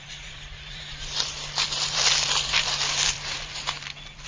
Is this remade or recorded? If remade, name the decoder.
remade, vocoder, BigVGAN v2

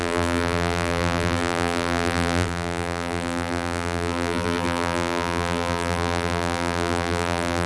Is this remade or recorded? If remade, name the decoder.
remade, vocoder, BigVGAN v2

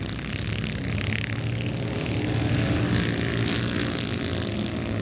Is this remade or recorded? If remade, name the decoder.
recorded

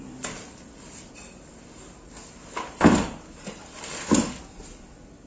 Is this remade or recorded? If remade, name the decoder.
recorded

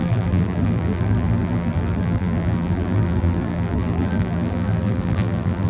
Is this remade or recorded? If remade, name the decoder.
remade, vocoder, BigVGAN v2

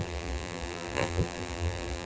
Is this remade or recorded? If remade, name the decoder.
remade, vocoder, BigVGAN v2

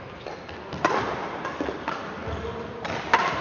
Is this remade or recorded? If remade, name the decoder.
recorded